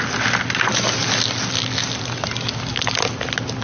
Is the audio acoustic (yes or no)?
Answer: yes